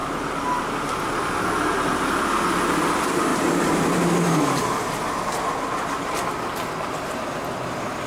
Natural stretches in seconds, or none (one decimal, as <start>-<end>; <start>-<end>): 0.6-3.3; 4.9-8.1